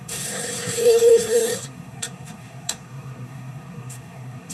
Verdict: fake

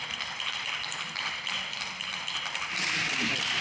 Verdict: real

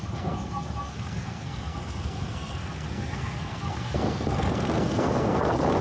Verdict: fake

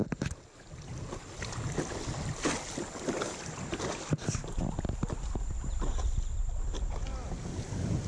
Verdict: real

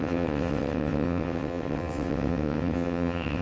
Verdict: fake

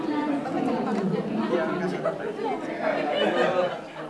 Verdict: real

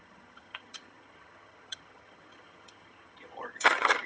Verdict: fake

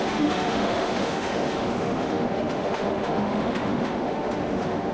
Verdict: fake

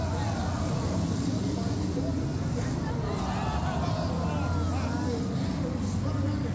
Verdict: real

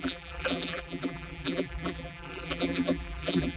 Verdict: fake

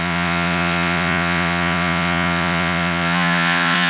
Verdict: fake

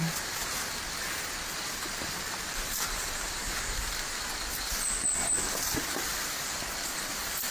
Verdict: real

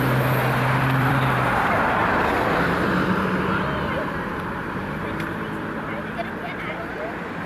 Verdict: fake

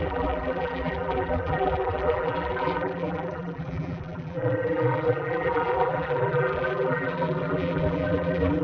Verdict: fake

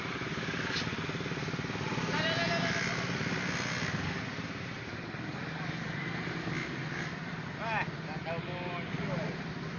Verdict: real